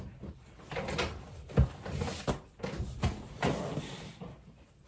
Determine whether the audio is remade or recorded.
recorded